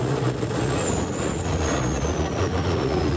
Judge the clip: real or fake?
fake